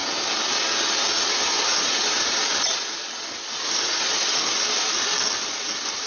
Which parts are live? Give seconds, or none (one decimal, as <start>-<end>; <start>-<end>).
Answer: 0.0-6.1